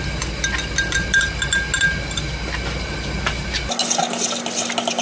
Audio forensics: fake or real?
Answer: real